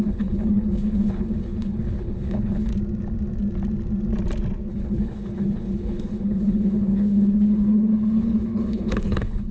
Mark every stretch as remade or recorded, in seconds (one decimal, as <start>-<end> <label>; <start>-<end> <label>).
0.0-2.7 remade; 2.7-4.7 recorded; 4.7-9.5 remade